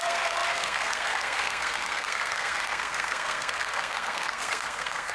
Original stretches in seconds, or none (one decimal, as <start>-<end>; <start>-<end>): none